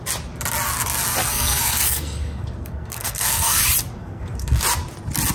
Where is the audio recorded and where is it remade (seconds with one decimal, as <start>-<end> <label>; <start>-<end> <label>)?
0.0-1.2 recorded; 1.2-3.6 remade; 3.6-4.0 recorded; 4.0-4.6 remade; 4.6-5.3 recorded